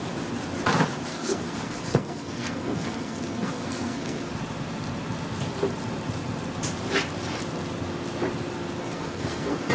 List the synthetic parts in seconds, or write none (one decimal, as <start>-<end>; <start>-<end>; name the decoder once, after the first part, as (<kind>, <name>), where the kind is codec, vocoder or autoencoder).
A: 1.1-4.3 (codec, SNAC); 8.8-9.7